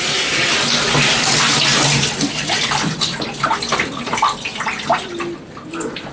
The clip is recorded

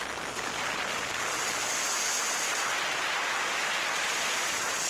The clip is recorded